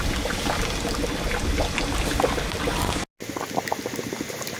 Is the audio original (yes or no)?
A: yes